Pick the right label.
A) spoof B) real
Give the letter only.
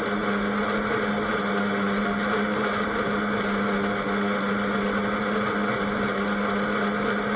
B